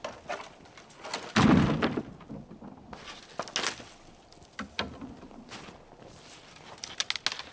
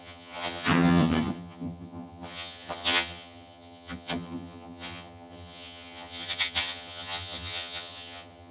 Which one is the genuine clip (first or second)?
first